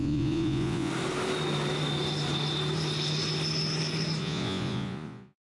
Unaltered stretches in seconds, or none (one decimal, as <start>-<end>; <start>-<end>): 0.9-4.2